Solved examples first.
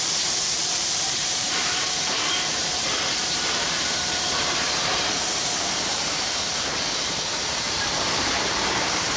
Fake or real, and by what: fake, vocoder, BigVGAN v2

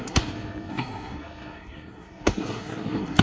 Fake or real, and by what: fake, codec, SNAC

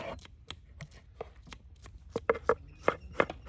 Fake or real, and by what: real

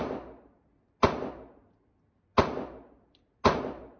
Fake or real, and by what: real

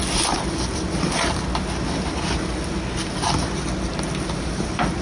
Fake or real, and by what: real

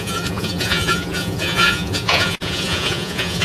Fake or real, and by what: fake, vocoder, Vocos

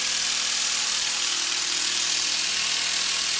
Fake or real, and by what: real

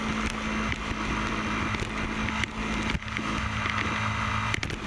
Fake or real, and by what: real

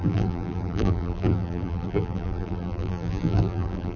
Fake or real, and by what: fake, vocoder, BigVGAN v2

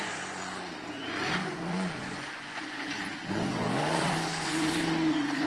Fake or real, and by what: fake, vocoder, Vocos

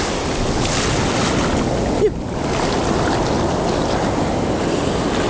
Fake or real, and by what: real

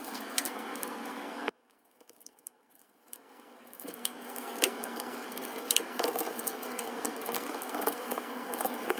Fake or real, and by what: fake, codec, SNAC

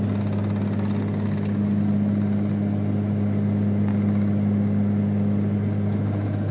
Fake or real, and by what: real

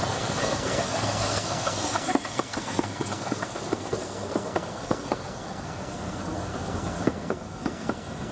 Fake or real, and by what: fake, codec, SNAC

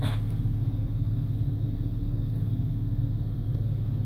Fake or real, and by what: fake, codec, SNAC